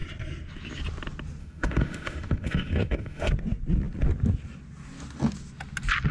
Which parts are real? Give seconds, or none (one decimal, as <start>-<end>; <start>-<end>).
0.0-1.4; 3.3-6.1